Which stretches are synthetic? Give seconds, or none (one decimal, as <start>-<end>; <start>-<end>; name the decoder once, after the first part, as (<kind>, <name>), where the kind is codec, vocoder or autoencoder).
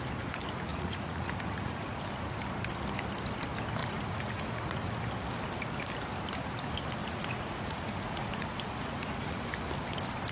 0.7-2.0 (vocoder, Vocos); 3.8-4.9; 7.0-9.5